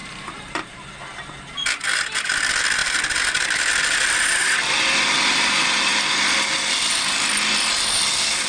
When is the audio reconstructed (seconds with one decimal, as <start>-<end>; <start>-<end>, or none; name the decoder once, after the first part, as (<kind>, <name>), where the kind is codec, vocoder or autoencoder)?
0.0-0.9 (vocoder, BigVGAN v2)